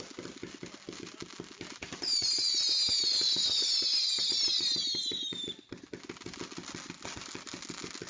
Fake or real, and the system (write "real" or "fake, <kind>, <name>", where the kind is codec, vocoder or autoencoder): real